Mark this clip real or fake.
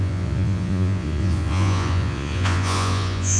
fake